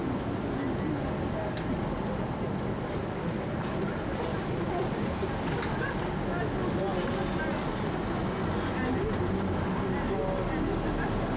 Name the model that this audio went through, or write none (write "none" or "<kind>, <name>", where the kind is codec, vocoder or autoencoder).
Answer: none